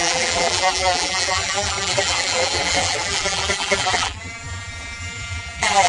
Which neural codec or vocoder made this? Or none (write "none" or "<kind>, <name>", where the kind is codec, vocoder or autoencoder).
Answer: vocoder, BigVGAN v2